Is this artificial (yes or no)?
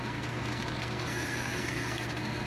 yes